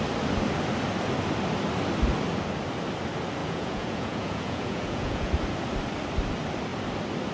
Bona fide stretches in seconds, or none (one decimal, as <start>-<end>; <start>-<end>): 0.0-3.4; 5.3-7.3